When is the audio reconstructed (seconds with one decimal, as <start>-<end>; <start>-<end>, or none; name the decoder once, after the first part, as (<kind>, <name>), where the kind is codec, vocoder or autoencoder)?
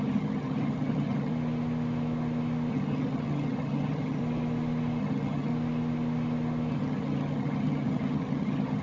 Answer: 0.0-1.3 (vocoder, HiFi-GAN); 2.7-4.2; 5.0-5.5; 6.7-8.8